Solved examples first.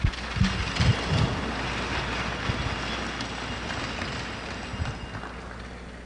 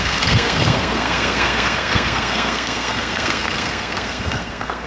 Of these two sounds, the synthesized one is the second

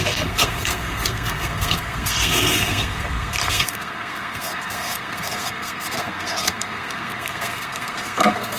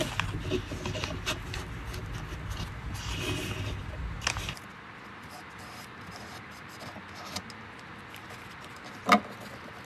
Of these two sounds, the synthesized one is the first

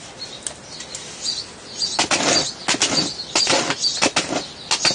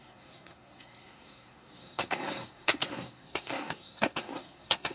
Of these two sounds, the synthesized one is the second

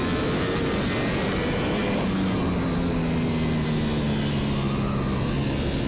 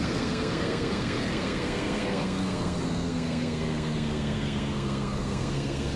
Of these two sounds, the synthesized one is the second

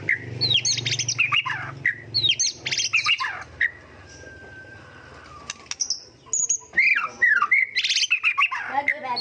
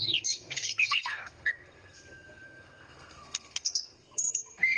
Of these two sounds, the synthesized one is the second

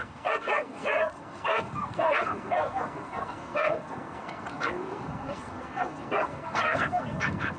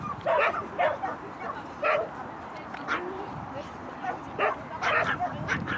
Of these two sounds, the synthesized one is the first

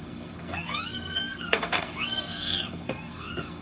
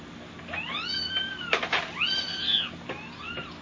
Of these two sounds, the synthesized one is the first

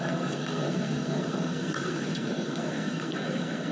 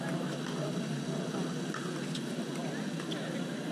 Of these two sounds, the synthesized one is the first